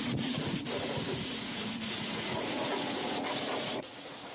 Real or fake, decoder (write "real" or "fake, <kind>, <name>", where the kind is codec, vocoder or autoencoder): fake, vocoder, Vocos